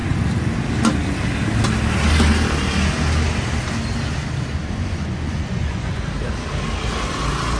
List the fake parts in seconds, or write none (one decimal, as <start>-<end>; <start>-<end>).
4.5-6.1